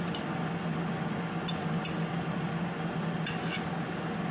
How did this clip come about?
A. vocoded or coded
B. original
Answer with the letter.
B